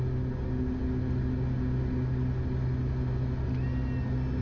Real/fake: real